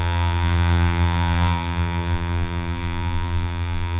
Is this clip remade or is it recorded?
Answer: remade